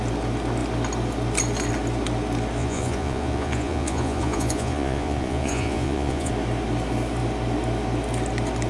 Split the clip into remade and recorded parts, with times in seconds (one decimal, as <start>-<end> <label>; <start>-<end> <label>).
0.0-2.6 recorded; 2.6-6.3 remade; 6.3-8.7 recorded